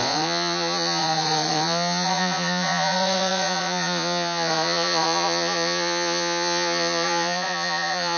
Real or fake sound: fake